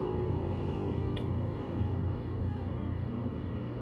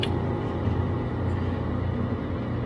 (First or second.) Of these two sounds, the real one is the second